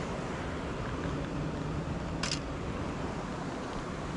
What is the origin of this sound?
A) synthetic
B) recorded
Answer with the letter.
B